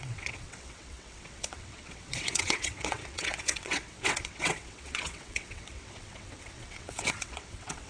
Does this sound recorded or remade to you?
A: remade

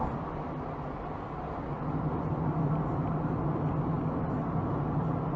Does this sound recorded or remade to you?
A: recorded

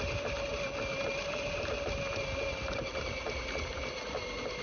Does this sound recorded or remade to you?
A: recorded